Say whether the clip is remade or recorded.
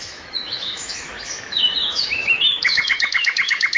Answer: remade